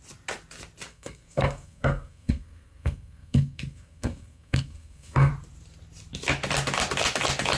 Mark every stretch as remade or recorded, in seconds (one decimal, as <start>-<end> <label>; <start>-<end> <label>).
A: 0.0-0.9 recorded; 0.9-5.3 remade; 5.3-7.6 recorded

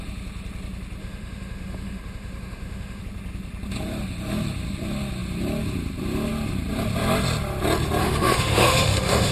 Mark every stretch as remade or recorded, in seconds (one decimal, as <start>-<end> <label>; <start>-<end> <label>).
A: 0.0-1.0 recorded; 1.0-3.0 remade; 3.0-8.0 recorded; 8.0-9.3 remade

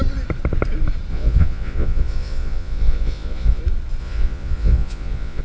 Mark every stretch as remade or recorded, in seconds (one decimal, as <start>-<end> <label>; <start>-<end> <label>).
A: 0.0-1.1 recorded; 1.1-3.6 remade; 3.6-4.0 recorded; 4.0-5.4 remade

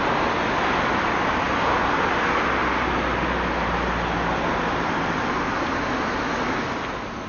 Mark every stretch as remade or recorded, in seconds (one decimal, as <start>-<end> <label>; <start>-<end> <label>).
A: 0.0-7.3 recorded

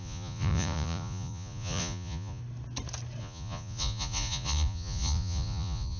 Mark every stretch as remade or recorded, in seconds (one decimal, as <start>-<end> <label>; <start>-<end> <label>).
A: 0.0-2.4 remade; 2.4-3.2 recorded; 3.2-6.0 remade

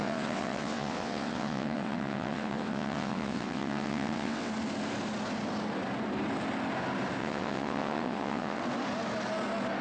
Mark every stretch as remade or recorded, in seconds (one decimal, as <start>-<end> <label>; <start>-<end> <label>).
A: 0.0-4.5 remade; 4.5-7.2 recorded; 7.2-8.6 remade; 8.6-9.8 recorded